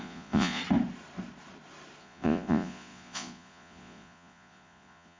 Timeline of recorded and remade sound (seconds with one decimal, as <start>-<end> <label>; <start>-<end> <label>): 0.0-0.6 remade; 0.6-2.0 recorded; 2.0-5.2 remade